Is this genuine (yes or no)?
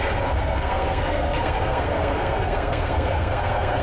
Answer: no